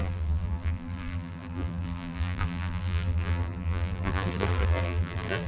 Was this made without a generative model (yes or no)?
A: no